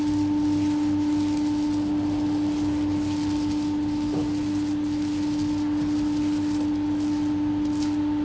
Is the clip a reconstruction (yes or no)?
no